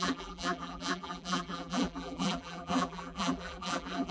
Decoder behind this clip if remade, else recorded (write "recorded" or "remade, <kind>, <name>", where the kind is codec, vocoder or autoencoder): remade, vocoder, BigVGAN v2